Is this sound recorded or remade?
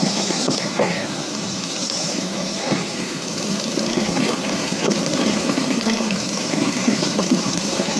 remade